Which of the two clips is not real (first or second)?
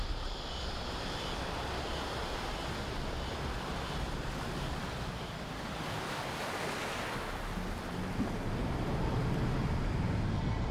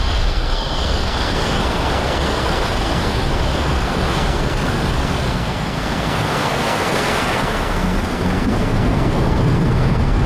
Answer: second